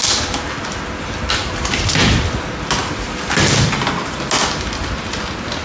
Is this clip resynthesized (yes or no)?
no